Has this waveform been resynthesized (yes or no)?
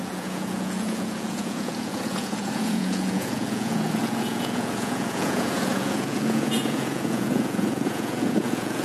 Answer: yes